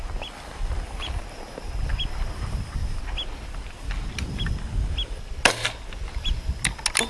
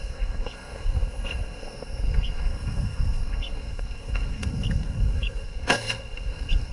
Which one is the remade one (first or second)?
second